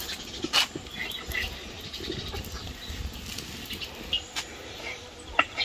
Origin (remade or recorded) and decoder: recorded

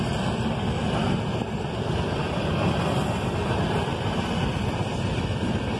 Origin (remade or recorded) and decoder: recorded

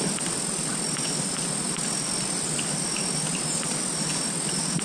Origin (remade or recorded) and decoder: recorded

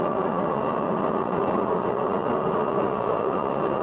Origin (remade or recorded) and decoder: remade, vocoder, Vocos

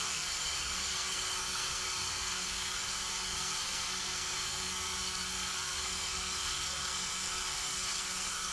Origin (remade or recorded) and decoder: remade, codec, SNAC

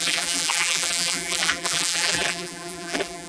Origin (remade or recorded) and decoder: remade, vocoder, BigVGAN v2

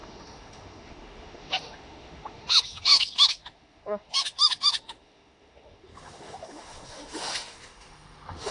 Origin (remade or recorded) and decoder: remade, autoencoder, DAC-VAE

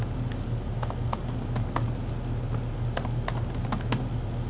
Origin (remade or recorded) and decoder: recorded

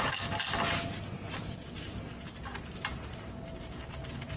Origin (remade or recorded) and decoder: recorded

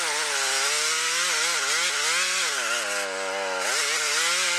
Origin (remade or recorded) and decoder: recorded